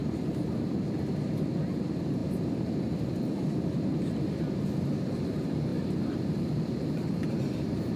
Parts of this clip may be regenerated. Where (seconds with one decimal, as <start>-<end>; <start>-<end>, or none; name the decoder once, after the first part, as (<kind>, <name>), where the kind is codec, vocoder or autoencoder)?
0.0-8.0 (vocoder, BigVGAN v2)